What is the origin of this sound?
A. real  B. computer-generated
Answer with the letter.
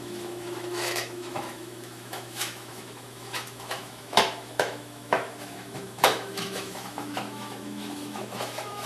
B